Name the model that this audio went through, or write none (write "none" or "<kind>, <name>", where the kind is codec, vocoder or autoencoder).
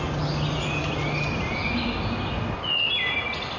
none